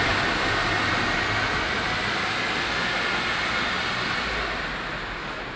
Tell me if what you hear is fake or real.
real